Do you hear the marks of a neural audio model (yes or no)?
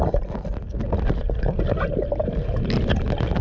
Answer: no